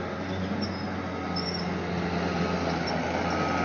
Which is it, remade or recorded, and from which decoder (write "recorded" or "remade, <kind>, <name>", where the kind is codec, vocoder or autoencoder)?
recorded